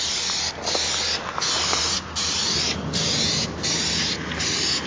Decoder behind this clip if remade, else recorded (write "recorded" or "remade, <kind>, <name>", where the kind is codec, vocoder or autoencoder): recorded